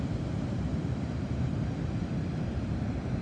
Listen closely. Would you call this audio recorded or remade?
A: remade